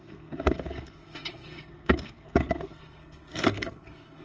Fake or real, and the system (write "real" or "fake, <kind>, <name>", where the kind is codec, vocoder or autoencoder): fake, codec, SNAC